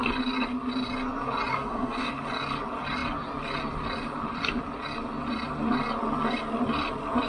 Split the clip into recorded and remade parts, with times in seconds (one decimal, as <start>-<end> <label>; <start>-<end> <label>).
0.0-1.5 recorded; 1.5-2.1 remade; 2.1-7.3 recorded